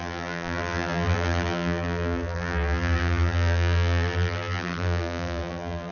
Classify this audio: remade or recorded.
remade